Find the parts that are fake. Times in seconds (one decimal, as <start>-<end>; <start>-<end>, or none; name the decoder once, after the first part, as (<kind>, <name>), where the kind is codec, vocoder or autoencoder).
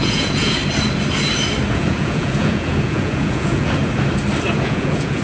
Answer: 0.0-0.6 (vocoder, Vocos); 1.7-3.8; 4.5-5.2